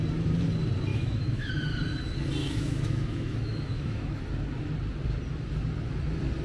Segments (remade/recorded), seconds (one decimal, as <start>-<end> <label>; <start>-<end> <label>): 0.0-0.9 recorded; 0.9-1.5 remade; 1.5-2.4 recorded; 2.4-4.2 remade; 4.2-6.4 recorded